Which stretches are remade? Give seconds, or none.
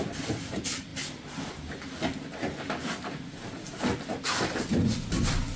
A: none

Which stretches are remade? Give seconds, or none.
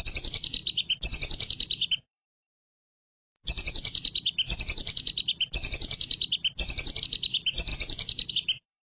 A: none